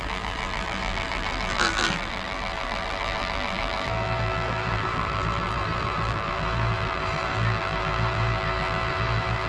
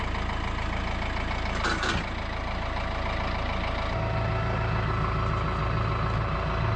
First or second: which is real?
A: second